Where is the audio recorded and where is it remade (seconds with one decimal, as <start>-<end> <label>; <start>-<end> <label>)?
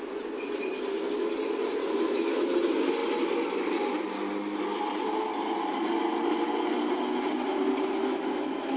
0.0-8.8 recorded